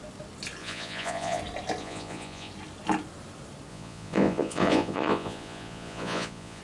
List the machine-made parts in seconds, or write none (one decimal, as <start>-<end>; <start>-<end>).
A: 0.6-1.4; 1.8-2.5; 3.7-6.6

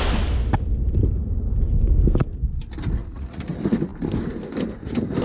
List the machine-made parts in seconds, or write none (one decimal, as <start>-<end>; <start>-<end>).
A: 3.0-3.5

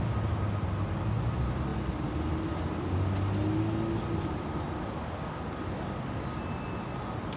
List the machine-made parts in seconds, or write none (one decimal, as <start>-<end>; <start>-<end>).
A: none

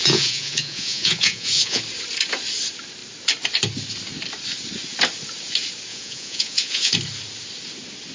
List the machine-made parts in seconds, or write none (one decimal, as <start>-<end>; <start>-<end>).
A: 0.0-1.8; 5.9-6.9

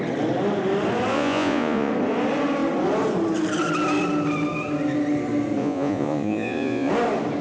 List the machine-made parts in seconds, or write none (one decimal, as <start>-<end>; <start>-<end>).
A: 1.1-1.9; 5.6-6.9

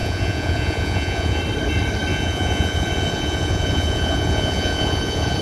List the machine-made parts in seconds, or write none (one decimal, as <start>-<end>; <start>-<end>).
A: 0.0-1.4; 2.1-5.4